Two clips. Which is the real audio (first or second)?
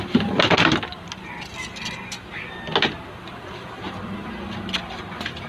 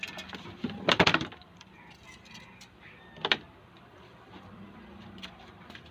first